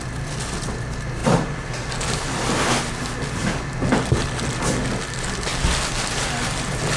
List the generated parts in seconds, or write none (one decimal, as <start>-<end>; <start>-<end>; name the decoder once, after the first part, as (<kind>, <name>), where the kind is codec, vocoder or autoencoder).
none